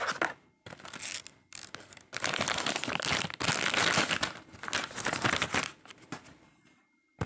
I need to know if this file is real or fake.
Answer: real